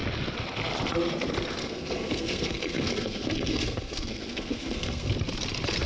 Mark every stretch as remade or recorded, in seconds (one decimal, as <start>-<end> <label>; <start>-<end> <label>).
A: 0.0-1.6 recorded; 1.6-5.1 remade; 5.1-5.9 recorded